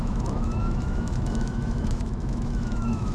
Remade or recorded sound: remade